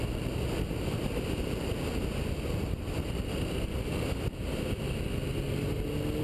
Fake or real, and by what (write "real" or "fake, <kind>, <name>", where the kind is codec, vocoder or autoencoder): real